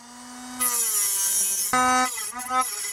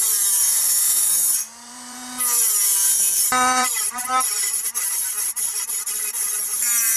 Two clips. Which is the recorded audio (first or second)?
first